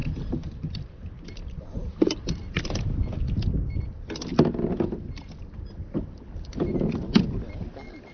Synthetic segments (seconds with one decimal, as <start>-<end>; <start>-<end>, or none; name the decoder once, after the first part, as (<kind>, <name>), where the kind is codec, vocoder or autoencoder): 0.0-2.2 (vocoder, BigVGAN v2)